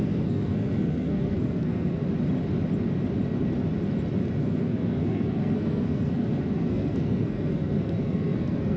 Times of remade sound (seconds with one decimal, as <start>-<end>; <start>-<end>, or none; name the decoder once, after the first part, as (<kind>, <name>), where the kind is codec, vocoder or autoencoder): 0.0-1.9 (codec, SNAC); 4.4-8.8